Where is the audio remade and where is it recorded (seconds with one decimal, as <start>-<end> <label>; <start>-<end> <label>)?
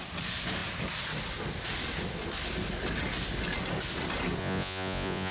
0.0-4.4 recorded; 4.4-5.3 remade